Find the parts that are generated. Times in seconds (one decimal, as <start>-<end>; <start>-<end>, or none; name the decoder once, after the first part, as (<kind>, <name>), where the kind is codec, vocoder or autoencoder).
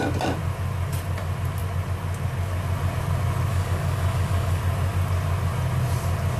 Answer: 3.5-4.6 (codec, DAC)